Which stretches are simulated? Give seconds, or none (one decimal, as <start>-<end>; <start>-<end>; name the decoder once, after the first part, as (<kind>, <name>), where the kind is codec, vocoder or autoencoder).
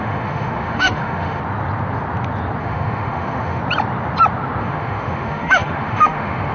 0.0-1.4 (autoencoder, DAC-VAE); 2.6-3.6; 4.6-6.5